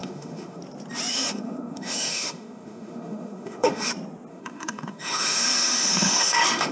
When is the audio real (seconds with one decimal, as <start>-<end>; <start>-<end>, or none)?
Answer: 0.6-1.1; 3.9-4.3